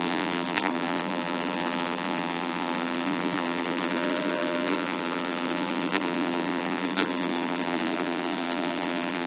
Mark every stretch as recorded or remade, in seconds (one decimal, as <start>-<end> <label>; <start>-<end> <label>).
0.0-9.3 remade